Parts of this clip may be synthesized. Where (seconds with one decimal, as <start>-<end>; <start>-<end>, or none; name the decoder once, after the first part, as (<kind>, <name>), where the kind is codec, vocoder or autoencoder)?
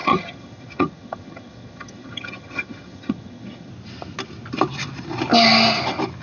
0.0-3.7 (vocoder, HiFi-GAN)